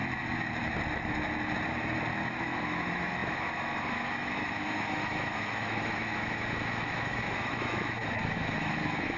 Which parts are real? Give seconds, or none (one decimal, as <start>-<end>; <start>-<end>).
0.0-2.4